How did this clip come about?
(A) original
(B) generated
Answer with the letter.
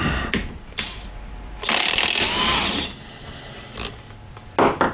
A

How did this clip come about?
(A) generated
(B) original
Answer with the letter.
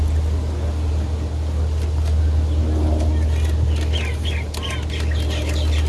B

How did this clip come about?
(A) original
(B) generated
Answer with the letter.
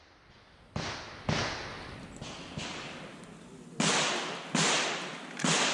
A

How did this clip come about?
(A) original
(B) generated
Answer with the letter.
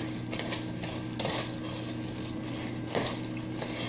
A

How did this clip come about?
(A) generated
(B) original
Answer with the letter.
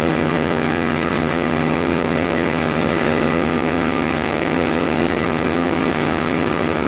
A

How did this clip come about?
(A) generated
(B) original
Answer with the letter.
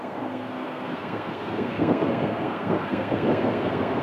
A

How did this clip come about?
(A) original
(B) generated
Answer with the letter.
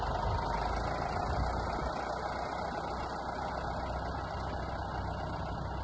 A